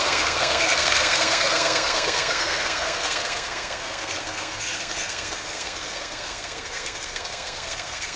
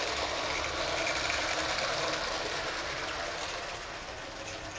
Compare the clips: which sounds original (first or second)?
second